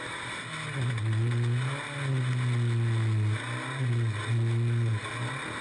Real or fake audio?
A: real